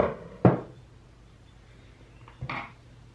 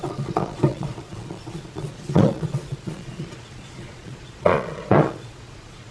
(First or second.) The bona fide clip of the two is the first